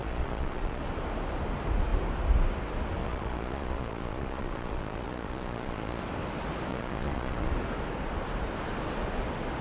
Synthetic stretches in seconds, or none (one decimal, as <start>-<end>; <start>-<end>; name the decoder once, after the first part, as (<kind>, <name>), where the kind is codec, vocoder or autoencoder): 0.0-0.8 (vocoder, Vocos); 3.0-6.0; 6.7-7.5